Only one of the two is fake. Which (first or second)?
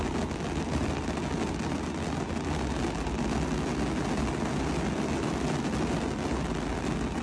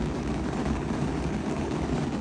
second